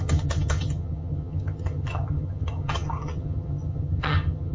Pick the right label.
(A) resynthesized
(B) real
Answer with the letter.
A